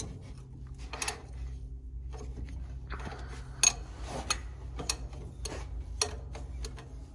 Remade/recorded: recorded